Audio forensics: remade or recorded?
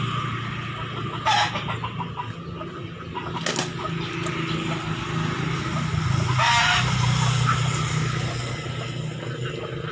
recorded